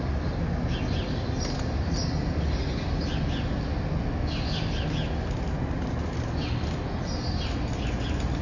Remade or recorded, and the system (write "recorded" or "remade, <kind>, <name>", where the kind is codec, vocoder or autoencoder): recorded